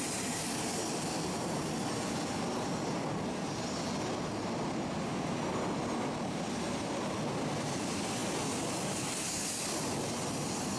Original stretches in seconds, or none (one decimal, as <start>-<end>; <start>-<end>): 0.0-10.8